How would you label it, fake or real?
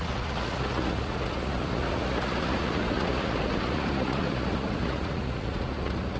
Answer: fake